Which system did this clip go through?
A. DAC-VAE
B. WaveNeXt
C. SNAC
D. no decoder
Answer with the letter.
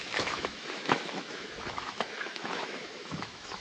A